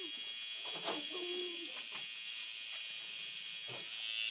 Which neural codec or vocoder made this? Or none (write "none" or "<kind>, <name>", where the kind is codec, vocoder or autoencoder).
none